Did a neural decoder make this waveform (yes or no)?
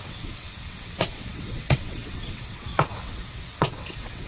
yes